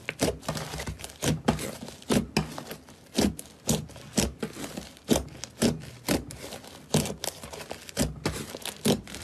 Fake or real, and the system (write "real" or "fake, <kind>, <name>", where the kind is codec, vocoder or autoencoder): real